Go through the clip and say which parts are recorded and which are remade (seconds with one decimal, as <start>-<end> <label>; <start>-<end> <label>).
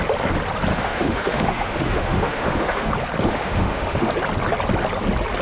0.0-0.7 recorded; 0.7-2.9 remade; 2.9-3.3 recorded; 3.3-4.1 remade; 4.1-5.4 recorded